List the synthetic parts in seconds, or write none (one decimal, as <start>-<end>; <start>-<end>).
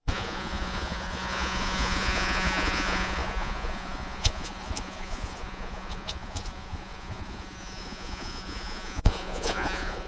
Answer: 0.0-10.1